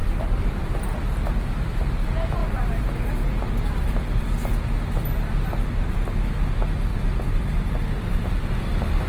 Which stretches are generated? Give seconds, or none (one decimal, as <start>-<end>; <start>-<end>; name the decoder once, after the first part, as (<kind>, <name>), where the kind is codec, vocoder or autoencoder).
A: 0.0-2.0 (vocoder, BigVGAN v2); 2.4-4.2; 6.9-7.8

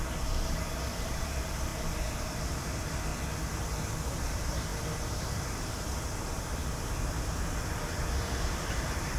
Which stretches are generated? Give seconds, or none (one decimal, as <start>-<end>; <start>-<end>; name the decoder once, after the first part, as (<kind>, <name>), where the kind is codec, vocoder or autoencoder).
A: 0.0-1.7 (vocoder, BigVGAN v2); 2.5-3.1; 3.9-6.6; 8.5-9.2